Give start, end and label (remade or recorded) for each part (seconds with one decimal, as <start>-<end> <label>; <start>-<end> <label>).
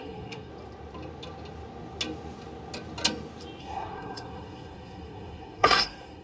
0.0-0.5 remade; 0.5-3.6 recorded; 3.6-6.2 remade